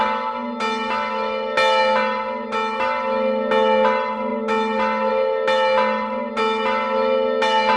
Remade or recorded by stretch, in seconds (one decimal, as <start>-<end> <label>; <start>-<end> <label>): 0.0-7.8 recorded